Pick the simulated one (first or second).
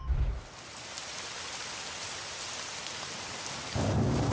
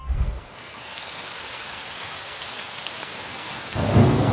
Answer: second